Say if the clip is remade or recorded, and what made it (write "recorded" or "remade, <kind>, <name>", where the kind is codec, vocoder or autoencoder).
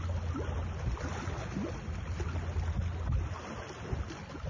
recorded